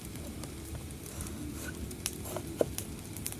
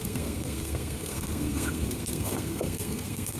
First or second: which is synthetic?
second